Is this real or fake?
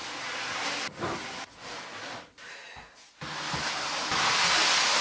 real